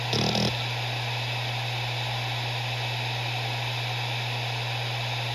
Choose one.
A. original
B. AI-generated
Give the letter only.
A